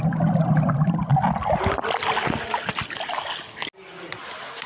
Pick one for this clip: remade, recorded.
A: recorded